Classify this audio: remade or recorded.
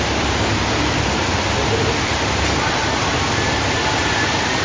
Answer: recorded